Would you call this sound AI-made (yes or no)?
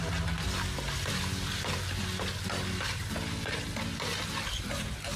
no